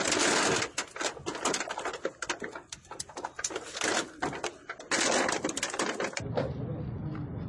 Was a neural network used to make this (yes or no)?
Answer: no